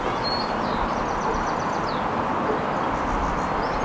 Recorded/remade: recorded